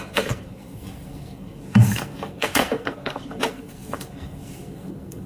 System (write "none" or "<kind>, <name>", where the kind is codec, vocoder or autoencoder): codec, SNAC